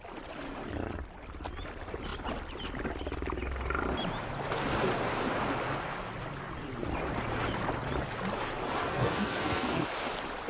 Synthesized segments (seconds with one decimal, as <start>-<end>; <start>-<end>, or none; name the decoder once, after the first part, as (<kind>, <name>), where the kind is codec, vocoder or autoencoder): 8.8-9.8 (codec, SNAC)